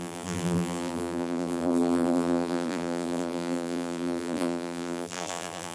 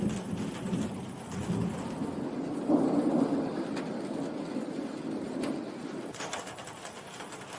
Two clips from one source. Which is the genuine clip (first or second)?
second